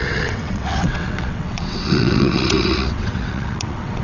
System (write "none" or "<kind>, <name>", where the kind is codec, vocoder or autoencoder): vocoder, WaveNeXt